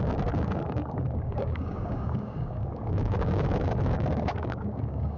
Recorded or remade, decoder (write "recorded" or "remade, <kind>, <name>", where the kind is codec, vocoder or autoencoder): remade, codec, DAC